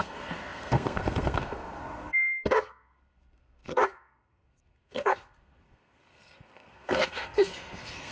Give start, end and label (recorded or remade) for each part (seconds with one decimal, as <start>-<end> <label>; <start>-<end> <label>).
0.0-8.1 remade

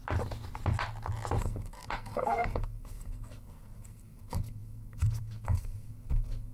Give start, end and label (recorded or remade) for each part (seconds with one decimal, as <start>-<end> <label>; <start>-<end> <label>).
0.0-1.4 recorded; 1.4-6.5 remade

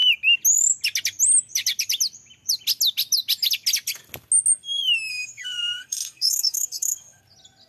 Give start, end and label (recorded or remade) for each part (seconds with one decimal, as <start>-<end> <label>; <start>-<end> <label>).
0.0-5.1 recorded; 5.1-7.2 remade; 7.2-7.7 recorded

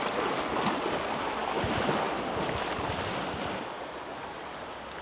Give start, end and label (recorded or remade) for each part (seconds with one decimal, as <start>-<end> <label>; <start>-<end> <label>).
0.0-5.0 recorded

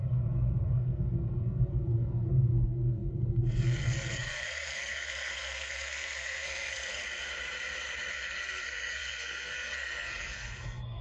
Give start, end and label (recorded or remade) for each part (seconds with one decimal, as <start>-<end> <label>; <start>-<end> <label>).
0.0-7.0 remade; 7.0-8.1 recorded; 8.1-11.0 remade

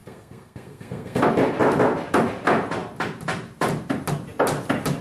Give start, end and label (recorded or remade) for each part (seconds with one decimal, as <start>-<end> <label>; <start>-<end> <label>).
0.0-1.2 remade; 1.2-5.0 recorded

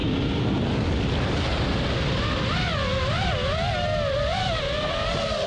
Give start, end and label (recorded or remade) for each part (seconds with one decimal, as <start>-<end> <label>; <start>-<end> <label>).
0.0-5.5 recorded